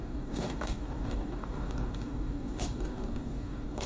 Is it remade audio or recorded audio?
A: remade